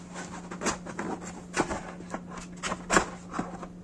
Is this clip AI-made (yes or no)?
no